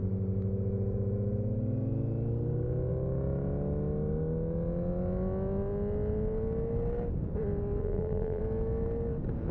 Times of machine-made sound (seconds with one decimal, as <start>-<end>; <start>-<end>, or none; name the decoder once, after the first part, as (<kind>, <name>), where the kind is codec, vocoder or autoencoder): 7.8-8.4 (vocoder, BigVGAN v2)